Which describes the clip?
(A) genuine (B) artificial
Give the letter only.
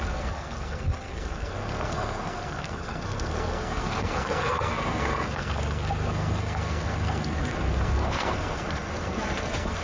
B